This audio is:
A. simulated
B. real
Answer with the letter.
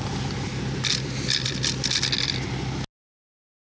B